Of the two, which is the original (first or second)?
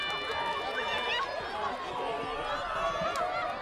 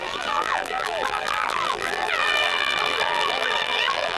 first